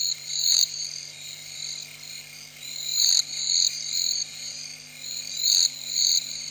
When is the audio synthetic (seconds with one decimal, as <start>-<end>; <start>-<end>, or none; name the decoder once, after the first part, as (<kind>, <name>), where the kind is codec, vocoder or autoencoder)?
0.0-1.6 (vocoder, BigVGAN v2); 2.1-6.5